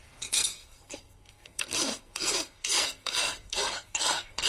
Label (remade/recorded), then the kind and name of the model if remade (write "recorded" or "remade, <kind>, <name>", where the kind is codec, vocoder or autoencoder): remade, codec, SNAC